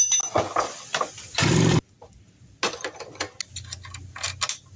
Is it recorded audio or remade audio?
recorded